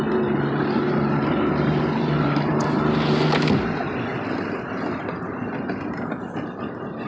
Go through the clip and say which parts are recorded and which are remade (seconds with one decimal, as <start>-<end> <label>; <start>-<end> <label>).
0.0-7.1 recorded